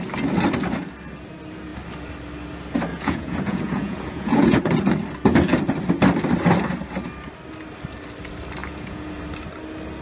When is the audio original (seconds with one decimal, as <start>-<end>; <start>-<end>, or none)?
0.0-2.9; 4.6-8.6; 9.1-10.0